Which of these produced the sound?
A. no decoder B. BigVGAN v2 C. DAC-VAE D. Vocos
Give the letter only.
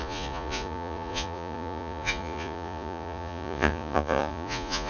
D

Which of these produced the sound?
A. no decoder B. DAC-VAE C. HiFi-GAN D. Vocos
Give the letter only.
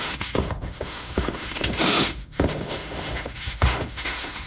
B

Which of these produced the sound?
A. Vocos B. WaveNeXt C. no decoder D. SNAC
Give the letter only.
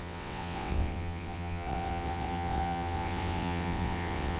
B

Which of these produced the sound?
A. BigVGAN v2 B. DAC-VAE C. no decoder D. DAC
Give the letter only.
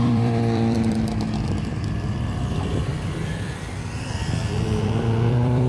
A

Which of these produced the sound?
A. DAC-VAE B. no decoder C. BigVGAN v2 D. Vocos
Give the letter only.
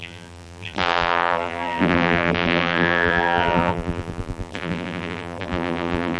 C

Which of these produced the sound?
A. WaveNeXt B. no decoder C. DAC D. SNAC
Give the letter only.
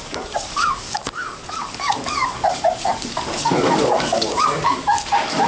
C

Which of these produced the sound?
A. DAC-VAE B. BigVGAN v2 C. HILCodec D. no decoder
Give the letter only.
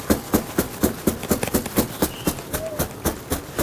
D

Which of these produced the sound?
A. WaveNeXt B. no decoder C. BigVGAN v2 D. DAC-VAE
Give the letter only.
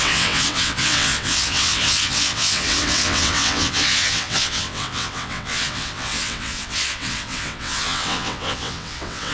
A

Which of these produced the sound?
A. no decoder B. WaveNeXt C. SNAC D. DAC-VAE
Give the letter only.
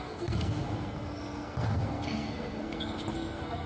C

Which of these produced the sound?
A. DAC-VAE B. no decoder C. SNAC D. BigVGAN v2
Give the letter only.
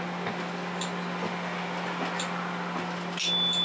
B